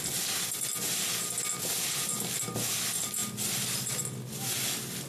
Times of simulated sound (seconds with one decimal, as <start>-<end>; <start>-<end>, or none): 3.2-4.0